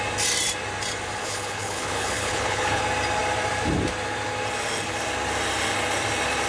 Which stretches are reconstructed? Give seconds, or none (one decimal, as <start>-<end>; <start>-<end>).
1.2-2.8